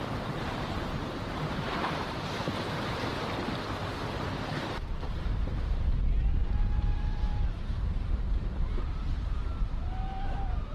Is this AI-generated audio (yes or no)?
yes